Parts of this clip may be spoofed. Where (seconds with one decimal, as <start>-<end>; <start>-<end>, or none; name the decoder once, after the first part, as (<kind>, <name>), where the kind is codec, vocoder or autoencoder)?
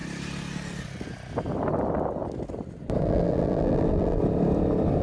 3.0-4.2 (vocoder, BigVGAN v2)